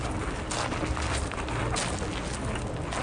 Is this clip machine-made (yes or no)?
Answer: no